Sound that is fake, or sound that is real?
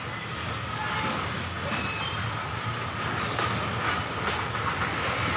real